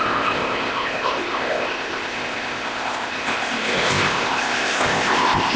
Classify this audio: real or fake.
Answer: fake